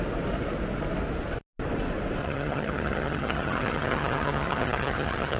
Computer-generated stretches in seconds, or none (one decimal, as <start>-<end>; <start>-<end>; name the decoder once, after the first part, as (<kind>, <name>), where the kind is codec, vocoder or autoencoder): 2.2-5.4 (vocoder, HiFi-GAN)